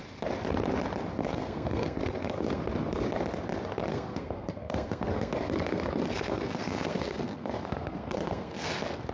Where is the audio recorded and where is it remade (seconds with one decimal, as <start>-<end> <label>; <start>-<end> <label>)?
0.0-1.2 recorded; 1.2-2.6 remade; 2.6-3.9 recorded; 3.9-8.7 remade; 8.7-9.1 recorded